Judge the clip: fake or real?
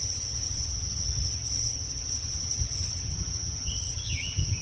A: fake